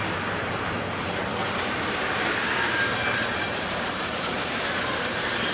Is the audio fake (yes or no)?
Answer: yes